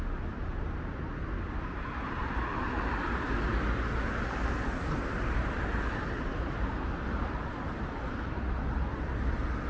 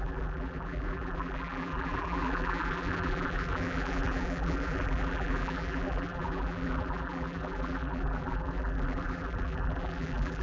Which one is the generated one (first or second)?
second